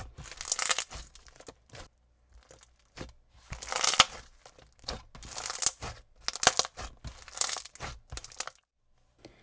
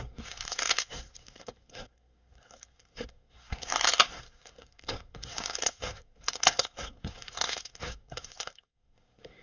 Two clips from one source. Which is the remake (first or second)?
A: second